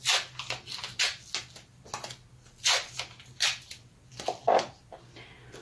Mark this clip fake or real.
real